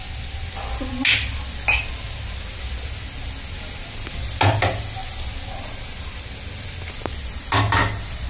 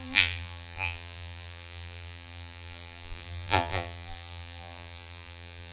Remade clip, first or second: second